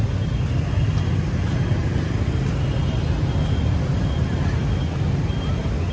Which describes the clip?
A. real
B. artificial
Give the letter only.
A